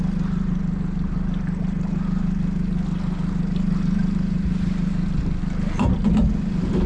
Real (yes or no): yes